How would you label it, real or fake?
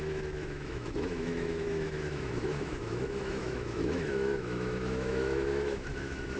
fake